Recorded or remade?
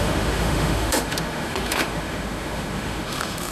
remade